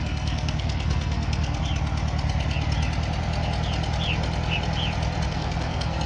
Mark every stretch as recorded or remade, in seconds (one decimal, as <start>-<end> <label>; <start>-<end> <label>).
0.0-1.6 remade; 1.6-5.3 recorded; 5.3-6.1 remade